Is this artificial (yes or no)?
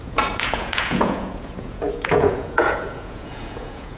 yes